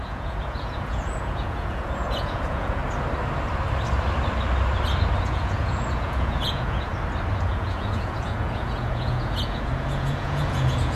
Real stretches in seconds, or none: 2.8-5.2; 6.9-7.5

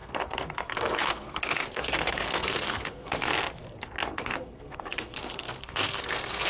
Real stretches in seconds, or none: 3.3-4.1

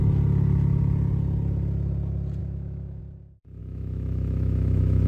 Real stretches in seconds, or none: 0.0-2.4; 3.0-3.6